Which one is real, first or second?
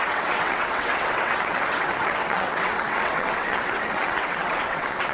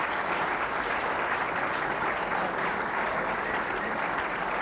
second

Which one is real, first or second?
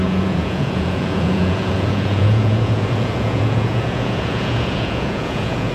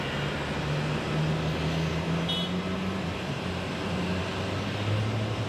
second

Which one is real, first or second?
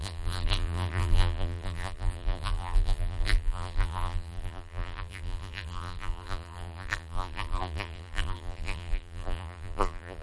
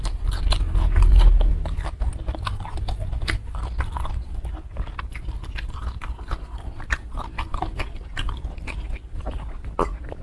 second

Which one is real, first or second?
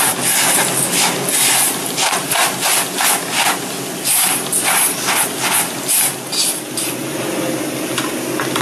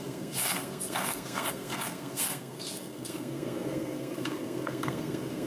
first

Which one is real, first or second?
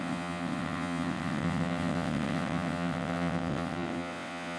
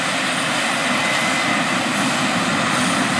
second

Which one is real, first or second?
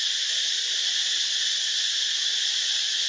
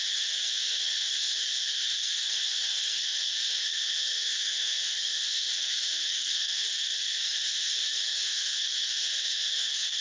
first